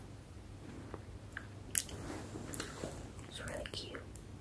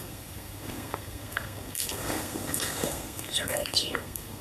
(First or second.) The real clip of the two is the first